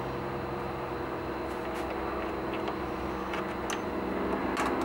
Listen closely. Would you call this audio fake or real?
real